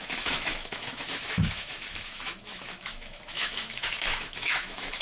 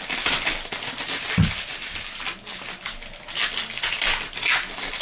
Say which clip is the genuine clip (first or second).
second